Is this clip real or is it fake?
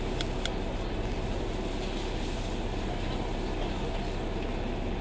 real